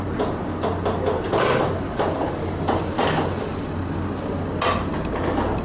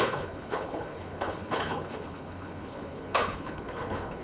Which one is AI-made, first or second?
second